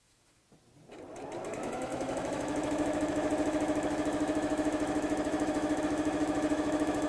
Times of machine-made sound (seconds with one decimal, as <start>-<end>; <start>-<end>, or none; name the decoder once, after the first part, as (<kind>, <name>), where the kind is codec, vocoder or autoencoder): 0.0-0.4 (autoencoder, DAC-VAE); 1.5-7.1